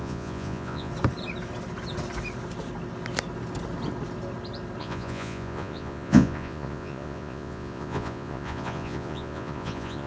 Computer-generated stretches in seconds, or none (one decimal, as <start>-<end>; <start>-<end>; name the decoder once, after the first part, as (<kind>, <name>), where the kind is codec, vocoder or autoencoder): 0.0-0.9 (vocoder, Vocos); 4.8-10.1